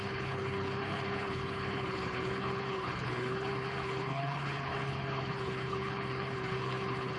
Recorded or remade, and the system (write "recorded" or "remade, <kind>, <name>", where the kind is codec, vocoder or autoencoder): remade, codec, HILCodec